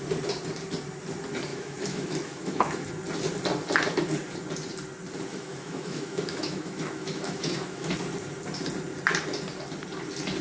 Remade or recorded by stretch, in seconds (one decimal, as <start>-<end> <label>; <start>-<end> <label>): 0.0-1.5 recorded; 1.5-2.9 remade; 2.9-5.3 recorded; 5.3-7.9 remade; 7.9-10.4 recorded